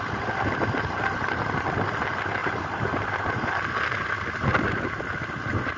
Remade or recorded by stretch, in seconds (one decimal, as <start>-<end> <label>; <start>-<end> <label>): 0.0-2.4 recorded; 2.4-3.5 remade; 3.5-5.8 recorded